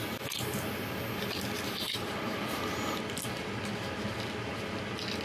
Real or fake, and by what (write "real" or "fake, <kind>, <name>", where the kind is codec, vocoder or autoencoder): real